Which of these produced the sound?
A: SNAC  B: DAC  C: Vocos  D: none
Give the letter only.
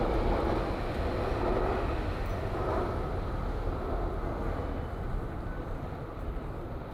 D